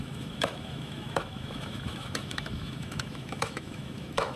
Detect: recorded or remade remade